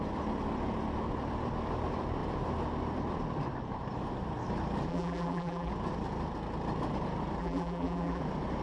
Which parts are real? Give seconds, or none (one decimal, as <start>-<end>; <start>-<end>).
0.0-4.9; 5.7-7.4; 8.2-8.6